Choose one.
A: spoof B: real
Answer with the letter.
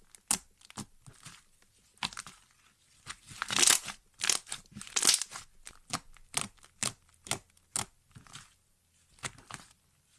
B